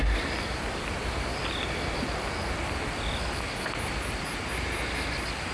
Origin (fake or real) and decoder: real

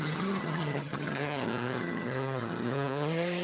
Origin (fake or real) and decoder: fake, vocoder, HiFi-GAN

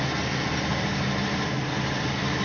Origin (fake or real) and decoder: real